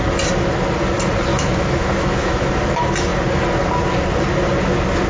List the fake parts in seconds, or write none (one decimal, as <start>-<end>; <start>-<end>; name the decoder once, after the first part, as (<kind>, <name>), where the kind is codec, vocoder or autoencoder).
1.3-2.5 (autoencoder, DAC-VAE)